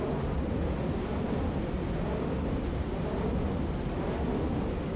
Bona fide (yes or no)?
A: yes